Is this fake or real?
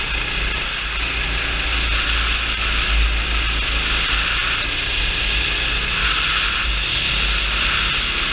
real